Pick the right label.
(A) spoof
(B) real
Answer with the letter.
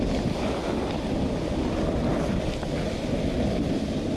B